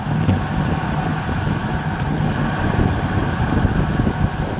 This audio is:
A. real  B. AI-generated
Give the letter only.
A